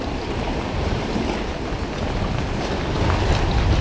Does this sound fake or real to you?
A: real